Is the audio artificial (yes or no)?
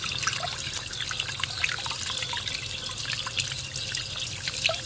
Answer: no